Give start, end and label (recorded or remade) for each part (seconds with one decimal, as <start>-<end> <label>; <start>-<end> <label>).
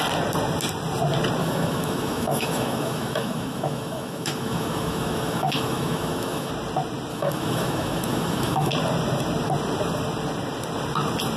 0.0-1.4 recorded; 1.4-6.5 remade; 6.5-7.1 recorded; 7.1-8.7 remade; 8.7-11.4 recorded